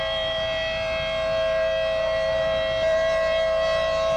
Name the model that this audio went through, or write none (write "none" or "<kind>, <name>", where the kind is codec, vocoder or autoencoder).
none